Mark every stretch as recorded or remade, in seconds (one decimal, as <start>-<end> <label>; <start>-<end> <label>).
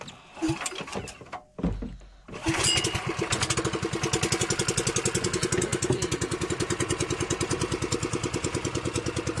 0.0-9.4 recorded